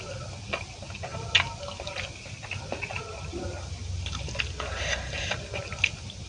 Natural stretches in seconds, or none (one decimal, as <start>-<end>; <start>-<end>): 0.0-6.3

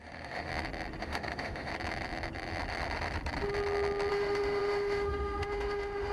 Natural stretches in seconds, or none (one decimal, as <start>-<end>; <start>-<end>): 0.5-1.0; 1.7-4.1

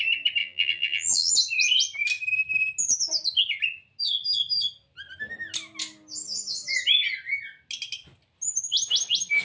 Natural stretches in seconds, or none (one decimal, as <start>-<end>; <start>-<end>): 0.0-0.4; 1.3-9.4

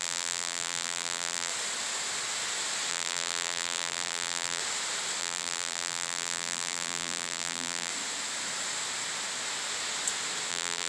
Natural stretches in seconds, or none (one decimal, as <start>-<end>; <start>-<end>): 1.5-2.9; 4.6-5.2; 7.9-10.5